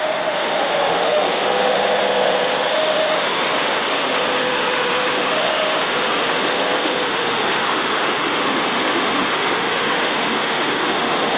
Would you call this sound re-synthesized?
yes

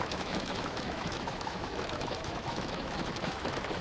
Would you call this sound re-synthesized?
yes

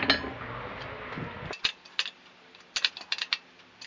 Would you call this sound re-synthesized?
no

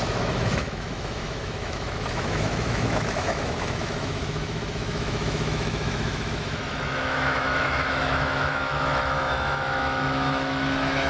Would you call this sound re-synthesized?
yes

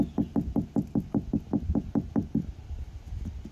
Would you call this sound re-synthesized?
no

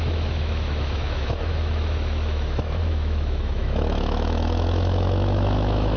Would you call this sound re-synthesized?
yes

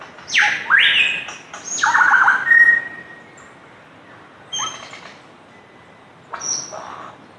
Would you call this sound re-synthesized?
no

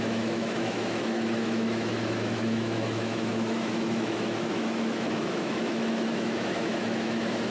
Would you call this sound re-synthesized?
yes